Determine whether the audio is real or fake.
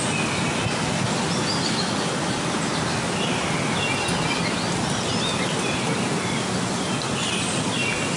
real